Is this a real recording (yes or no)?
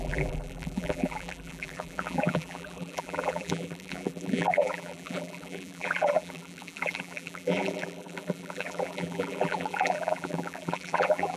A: no